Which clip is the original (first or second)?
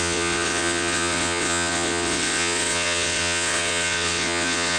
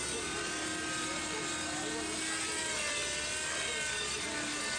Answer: second